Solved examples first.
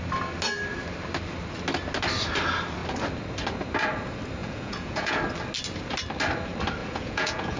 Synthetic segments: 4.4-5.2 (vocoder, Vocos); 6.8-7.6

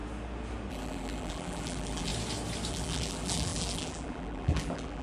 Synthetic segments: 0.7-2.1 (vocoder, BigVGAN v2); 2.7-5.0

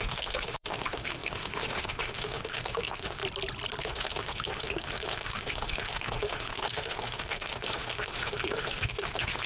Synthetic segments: 0.0-3.2 (autoencoder, DAC-VAE); 3.8-9.5

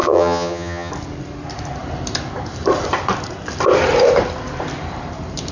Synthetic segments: 0.0-0.9 (vocoder, HiFi-GAN)

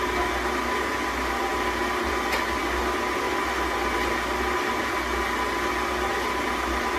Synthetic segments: none

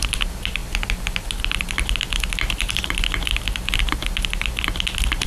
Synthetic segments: none